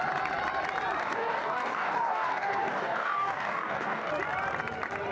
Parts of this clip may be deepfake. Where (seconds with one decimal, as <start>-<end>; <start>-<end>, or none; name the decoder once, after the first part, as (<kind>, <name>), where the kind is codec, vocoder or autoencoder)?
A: 1.0-4.1 (codec, DAC)